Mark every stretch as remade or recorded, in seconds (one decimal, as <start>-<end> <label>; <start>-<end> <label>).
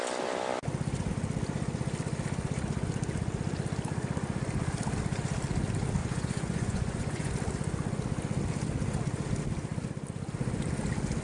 0.0-6.0 recorded; 6.0-7.3 remade; 7.3-11.2 recorded